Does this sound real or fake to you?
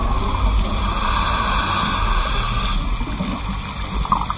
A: real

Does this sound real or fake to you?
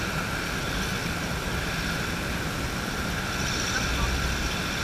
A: real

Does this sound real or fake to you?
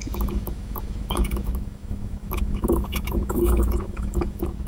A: fake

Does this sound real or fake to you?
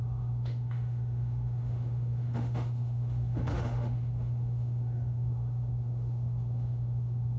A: fake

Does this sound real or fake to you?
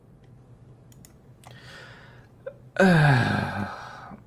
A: real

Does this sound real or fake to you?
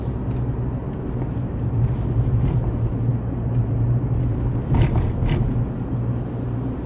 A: real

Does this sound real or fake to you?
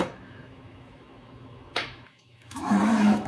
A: fake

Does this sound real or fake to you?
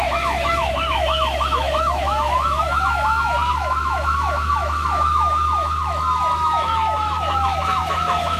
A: fake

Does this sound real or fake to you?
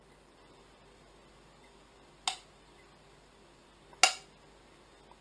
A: real